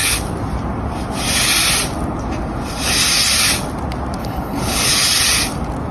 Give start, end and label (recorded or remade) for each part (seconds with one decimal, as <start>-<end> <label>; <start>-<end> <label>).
0.0-4.2 recorded; 4.2-4.9 remade; 4.9-5.9 recorded